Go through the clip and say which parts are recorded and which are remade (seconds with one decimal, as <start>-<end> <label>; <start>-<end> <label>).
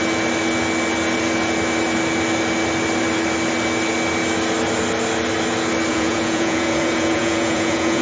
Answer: 0.0-5.9 recorded; 5.9-8.0 remade